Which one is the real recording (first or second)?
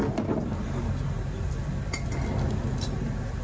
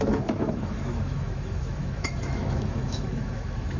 first